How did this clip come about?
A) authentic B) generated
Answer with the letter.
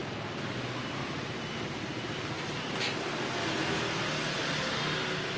A